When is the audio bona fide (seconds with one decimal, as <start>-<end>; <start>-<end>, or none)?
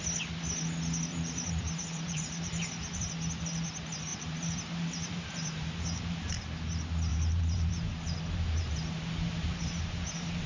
0.0-1.1; 3.0-4.1; 6.3-7.1